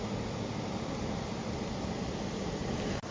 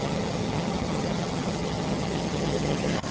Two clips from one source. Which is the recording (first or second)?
first